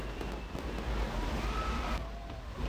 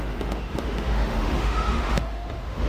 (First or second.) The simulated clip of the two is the second